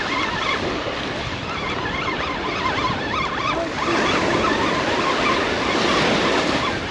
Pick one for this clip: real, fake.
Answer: real